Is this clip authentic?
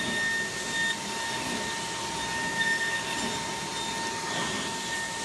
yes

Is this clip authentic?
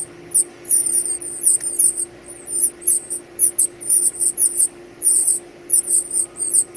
yes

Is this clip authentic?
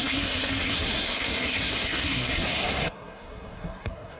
no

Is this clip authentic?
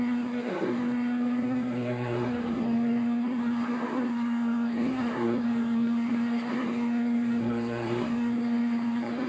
no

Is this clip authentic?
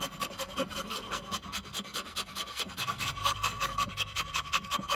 no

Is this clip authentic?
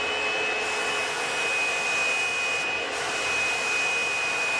yes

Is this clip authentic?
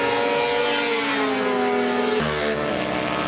yes